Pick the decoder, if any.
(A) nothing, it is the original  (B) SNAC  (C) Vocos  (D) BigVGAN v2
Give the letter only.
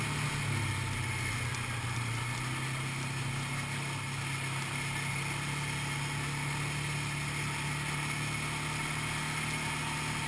A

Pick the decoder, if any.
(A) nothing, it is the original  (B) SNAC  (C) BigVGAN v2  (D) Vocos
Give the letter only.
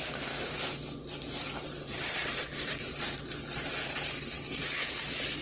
C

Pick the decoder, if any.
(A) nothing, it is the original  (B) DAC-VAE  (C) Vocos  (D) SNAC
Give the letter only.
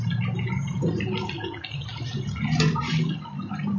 A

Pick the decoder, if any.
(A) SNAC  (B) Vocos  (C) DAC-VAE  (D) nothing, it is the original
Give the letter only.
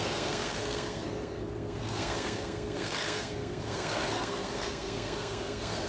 A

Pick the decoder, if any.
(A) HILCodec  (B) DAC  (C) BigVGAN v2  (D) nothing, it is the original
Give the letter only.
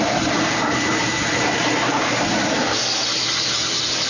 C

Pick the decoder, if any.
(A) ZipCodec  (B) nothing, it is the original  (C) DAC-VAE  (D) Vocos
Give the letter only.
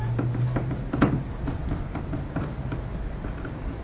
B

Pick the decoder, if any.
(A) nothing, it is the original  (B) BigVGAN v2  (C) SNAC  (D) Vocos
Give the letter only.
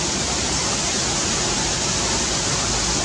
A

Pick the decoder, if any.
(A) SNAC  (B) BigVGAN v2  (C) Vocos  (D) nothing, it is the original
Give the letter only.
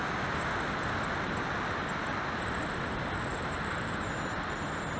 D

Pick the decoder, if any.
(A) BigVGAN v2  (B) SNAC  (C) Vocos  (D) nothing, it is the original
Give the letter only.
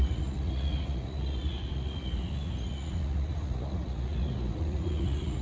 C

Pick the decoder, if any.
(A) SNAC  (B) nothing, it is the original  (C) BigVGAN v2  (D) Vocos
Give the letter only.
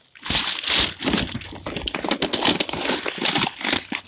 B